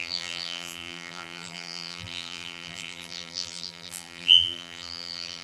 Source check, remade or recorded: remade